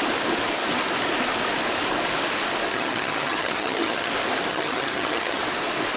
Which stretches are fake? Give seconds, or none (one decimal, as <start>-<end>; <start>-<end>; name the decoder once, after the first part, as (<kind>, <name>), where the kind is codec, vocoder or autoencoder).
2.7-4.1 (vocoder, HiFi-GAN); 4.5-5.4

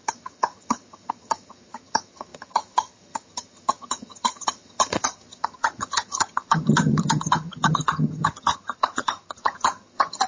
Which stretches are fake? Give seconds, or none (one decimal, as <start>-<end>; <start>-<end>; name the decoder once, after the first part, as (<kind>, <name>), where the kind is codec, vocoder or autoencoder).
0.0-10.3 (vocoder, HiFi-GAN)

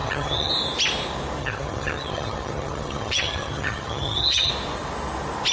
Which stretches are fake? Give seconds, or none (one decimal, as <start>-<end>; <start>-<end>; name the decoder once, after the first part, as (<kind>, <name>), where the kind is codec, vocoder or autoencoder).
0.0-0.5 (vocoder, HiFi-GAN); 1.4-4.5

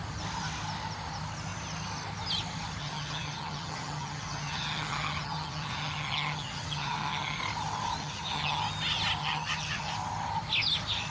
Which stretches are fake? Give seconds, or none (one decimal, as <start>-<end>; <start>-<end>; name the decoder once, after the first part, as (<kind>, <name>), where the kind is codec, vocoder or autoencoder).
2.8-7.4 (vocoder, HiFi-GAN); 8.0-8.6; 9.2-9.9

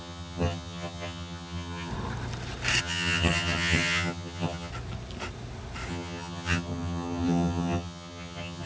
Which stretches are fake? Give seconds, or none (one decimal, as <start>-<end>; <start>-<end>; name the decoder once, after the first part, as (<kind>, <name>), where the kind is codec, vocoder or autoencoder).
0.0-1.9 (vocoder, HiFi-GAN); 2.8-4.7; 5.9-8.7

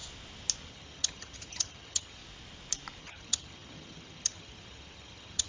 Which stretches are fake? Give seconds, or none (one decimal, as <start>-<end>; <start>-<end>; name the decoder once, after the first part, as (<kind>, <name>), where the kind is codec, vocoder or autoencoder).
0.7-2.2 (vocoder, HiFi-GAN); 3.0-5.5

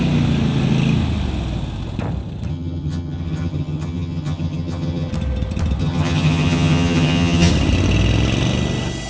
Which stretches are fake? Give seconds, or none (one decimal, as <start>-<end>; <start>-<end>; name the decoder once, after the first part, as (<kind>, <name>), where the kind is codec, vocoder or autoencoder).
2.5-5.1 (vocoder, HiFi-GAN); 5.8-7.5

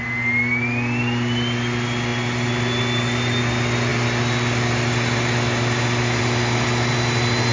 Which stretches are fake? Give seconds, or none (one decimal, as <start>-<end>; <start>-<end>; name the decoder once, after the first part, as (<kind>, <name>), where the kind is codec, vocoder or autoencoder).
none